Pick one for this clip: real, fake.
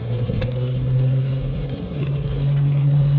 fake